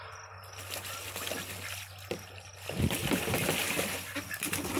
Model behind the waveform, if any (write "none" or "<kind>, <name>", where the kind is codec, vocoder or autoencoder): none